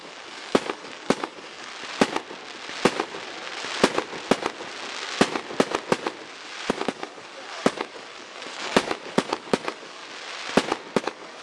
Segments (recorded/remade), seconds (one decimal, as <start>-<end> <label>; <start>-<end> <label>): 0.0-1.7 remade; 1.7-6.7 recorded; 6.7-10.0 remade; 10.0-11.0 recorded; 11.0-11.4 remade